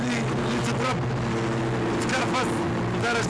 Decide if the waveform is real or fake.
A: real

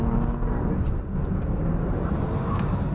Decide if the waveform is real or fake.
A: real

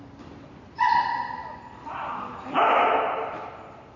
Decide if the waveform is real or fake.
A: real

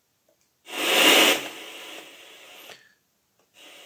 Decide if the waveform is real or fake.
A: real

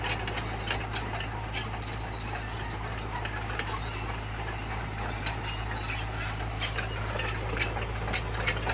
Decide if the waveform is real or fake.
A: real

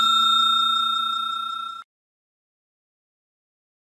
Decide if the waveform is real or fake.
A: real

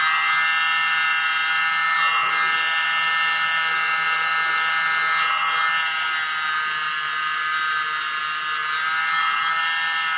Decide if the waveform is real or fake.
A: real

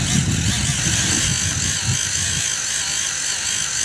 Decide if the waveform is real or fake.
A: real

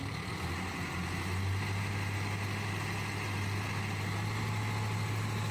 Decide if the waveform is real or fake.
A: real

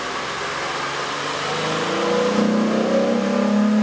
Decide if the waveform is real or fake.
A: real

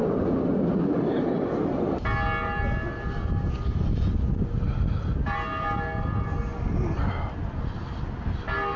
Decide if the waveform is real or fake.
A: real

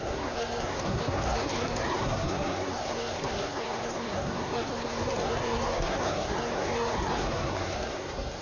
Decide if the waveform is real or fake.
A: fake